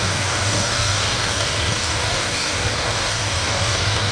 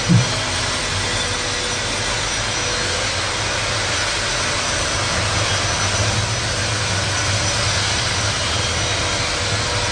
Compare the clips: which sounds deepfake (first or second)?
first